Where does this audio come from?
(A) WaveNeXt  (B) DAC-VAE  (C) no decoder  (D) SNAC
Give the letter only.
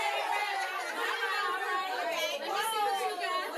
C